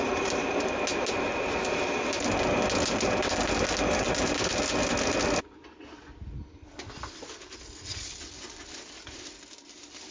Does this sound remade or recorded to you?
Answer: recorded